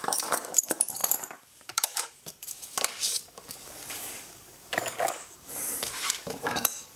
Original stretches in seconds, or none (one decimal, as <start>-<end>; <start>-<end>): none